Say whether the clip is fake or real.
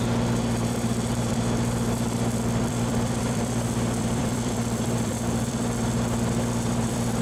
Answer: fake